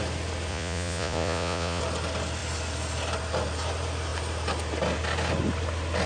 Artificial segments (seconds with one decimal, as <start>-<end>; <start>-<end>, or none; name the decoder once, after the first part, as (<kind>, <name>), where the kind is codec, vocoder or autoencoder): 0.5-1.8 (vocoder, Vocos)